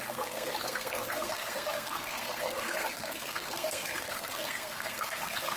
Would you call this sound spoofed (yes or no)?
yes